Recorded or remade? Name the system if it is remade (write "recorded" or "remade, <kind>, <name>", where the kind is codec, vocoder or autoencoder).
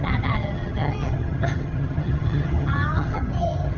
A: remade, vocoder, HiFi-GAN